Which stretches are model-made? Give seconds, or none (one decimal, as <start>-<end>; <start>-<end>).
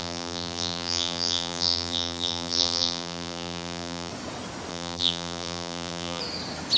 0.0-4.1; 4.7-6.2